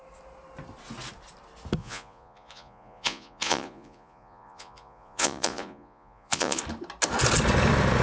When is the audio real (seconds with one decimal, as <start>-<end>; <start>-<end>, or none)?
0.0-1.8; 6.6-8.0

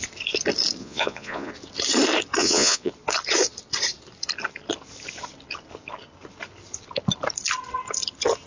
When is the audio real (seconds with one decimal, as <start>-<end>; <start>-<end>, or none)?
0.0-0.8; 1.5-2.4; 2.9-8.5

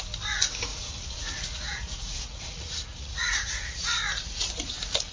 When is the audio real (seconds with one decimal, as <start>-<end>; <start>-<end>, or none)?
0.0-0.7; 3.8-5.1

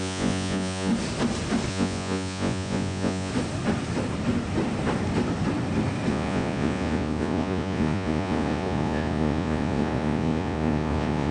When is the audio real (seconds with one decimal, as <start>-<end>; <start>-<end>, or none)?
0.9-1.7; 3.3-6.1

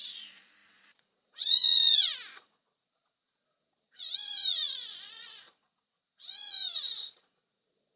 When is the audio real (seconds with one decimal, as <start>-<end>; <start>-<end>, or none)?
none

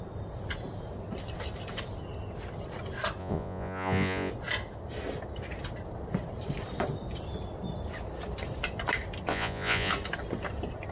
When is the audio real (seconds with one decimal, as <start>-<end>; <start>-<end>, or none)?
0.0-3.2; 4.3-9.3; 9.9-10.9

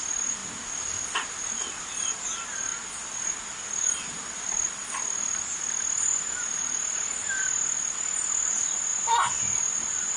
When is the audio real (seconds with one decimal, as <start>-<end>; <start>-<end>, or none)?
0.0-10.2